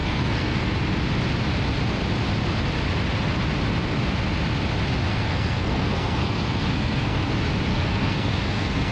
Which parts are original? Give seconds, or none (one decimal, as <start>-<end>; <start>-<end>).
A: 0.7-5.1; 7.3-7.7